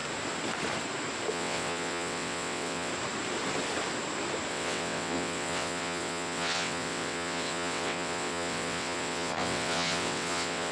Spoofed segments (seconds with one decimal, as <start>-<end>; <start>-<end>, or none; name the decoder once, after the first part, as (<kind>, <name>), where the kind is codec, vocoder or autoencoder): 1.3-2.9 (vocoder, WaveNeXt); 4.5-10.7